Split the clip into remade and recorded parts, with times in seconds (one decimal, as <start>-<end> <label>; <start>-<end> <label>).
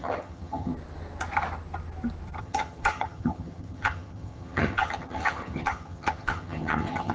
0.0-0.7 remade; 0.7-2.4 recorded; 2.4-7.1 remade